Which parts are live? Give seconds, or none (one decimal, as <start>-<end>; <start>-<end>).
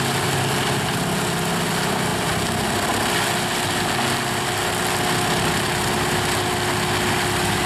0.0-7.7